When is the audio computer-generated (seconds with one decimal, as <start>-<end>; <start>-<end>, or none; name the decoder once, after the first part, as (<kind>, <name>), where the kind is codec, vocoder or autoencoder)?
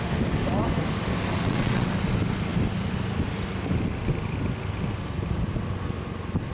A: 1.3-1.9 (vocoder, WaveNeXt)